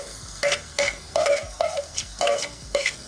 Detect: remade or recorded remade